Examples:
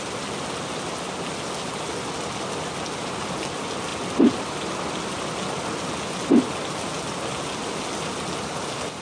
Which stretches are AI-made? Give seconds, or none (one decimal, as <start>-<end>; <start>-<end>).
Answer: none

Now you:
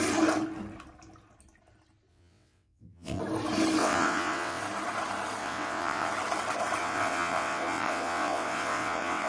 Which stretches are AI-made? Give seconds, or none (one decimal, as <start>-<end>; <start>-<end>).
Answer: 2.1-3.2; 3.8-4.6; 5.4-6.1; 6.8-9.3

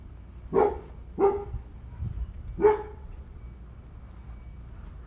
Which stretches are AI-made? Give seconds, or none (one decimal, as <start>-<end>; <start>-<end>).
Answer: 2.9-3.4

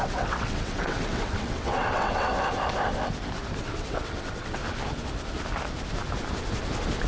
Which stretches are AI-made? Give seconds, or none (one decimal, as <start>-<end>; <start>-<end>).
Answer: 0.0-2.3; 3.6-4.6

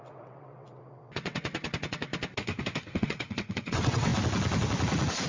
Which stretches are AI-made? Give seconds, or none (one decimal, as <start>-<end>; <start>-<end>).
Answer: 0.0-2.1; 3.0-4.1